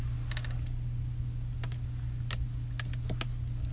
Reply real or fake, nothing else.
real